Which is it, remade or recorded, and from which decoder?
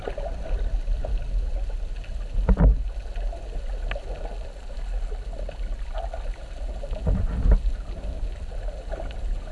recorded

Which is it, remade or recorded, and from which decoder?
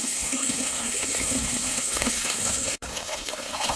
remade, codec, SNAC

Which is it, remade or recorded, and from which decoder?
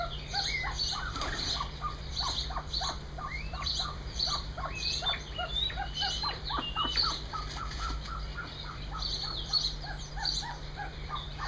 remade, vocoder, BigVGAN v2